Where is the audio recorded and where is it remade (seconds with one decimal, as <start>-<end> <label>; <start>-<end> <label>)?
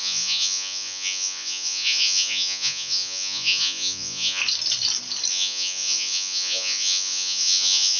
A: 0.0-4.4 remade; 4.4-5.3 recorded; 5.3-8.0 remade